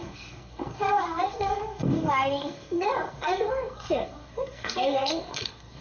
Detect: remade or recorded remade